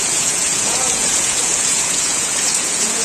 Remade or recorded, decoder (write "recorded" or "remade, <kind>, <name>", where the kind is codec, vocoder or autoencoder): remade, vocoder, Vocos